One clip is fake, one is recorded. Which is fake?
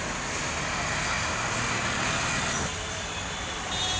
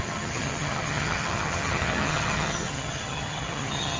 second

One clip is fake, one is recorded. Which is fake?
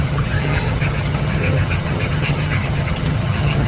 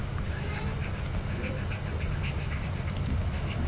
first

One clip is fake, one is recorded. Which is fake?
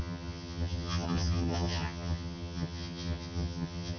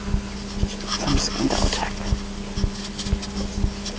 first